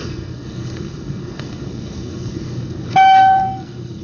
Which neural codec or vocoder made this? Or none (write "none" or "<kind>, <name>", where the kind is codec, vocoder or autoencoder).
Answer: codec, SNAC